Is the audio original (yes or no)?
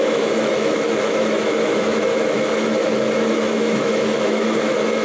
no